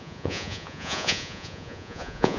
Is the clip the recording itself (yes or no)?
no